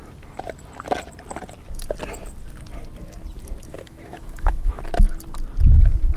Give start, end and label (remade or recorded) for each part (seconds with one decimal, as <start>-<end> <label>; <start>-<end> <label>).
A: 0.0-3.7 recorded; 3.7-4.8 remade; 4.8-6.2 recorded